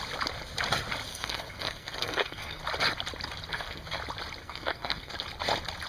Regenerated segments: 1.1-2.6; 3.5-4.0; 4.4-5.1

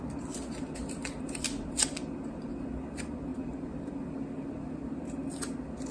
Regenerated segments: none

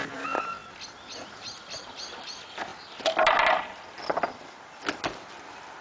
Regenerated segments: none

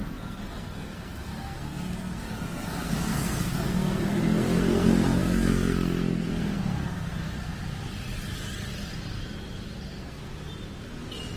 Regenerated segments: 0.0-7.5; 9.9-10.3

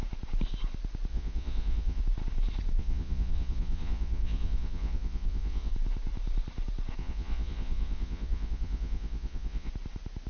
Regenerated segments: 1.1-2.0; 2.8-5.7; 7.0-9.7

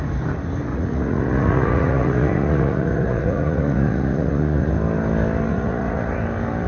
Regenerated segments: 0.7-4.7; 5.5-6.2